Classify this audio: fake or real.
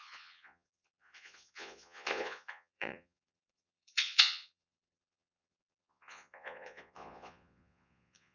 fake